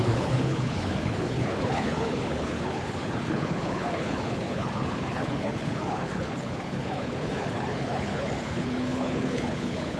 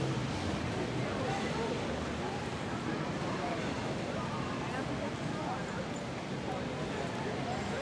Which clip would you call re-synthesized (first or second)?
first